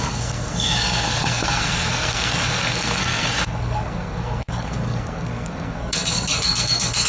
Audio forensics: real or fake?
fake